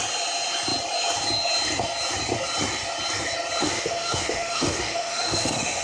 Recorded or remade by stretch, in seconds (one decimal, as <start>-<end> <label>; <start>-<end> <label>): 0.0-3.6 recorded; 3.6-5.8 remade